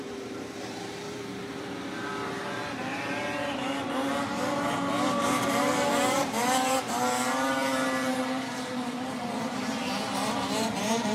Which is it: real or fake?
fake